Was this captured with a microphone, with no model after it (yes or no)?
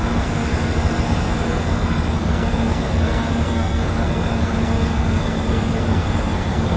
no